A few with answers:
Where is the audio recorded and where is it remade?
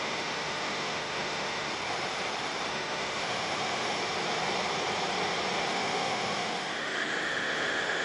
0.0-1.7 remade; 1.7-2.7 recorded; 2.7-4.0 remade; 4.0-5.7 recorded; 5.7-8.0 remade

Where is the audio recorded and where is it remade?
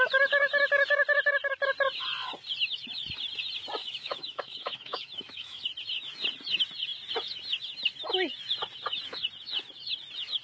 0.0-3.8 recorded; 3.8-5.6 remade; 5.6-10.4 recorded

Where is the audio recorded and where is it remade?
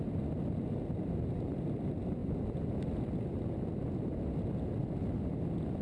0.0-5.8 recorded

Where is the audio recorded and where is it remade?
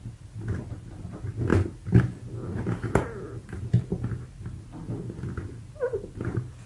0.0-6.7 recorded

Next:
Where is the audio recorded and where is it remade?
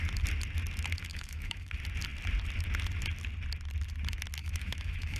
0.0-1.1 recorded; 1.1-1.7 remade; 1.7-4.4 recorded; 4.4-5.2 remade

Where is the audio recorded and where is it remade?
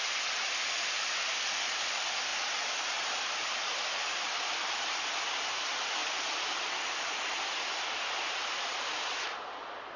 0.0-10.0 recorded